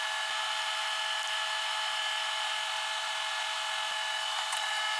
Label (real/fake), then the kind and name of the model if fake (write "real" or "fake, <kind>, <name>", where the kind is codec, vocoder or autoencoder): real